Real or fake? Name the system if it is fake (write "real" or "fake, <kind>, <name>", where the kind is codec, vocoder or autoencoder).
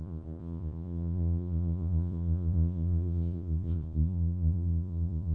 fake, vocoder, Vocos